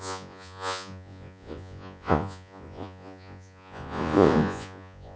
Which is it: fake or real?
fake